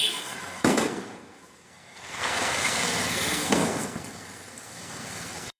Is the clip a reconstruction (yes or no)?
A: yes